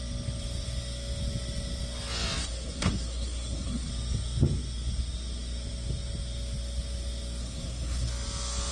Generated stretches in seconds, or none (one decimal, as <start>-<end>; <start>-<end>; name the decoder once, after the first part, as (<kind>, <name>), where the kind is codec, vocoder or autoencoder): 2.4-3.9 (codec, SNAC); 7.4-8.1